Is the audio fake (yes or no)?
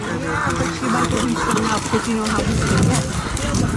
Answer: no